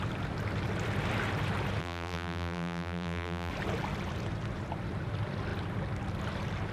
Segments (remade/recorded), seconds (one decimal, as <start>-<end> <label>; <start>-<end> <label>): 0.0-1.8 recorded; 1.8-3.5 remade; 3.5-6.7 recorded

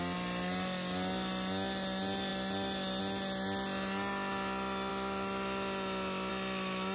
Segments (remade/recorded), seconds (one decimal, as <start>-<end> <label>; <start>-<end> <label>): 0.0-6.9 recorded

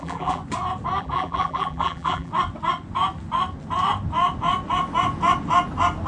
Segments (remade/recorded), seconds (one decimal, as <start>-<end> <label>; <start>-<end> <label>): 0.0-0.4 remade; 0.4-1.0 recorded; 1.0-2.3 remade; 2.3-6.1 recorded